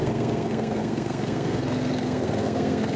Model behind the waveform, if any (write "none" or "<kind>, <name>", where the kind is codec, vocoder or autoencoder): codec, SNAC